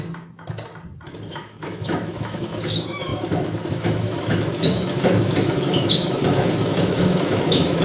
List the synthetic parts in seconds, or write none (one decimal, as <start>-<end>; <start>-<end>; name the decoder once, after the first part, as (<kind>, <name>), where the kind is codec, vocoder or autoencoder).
0.0-0.7 (autoencoder, DAC-VAE); 1.3-7.8